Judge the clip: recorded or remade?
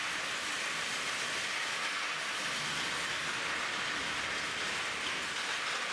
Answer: recorded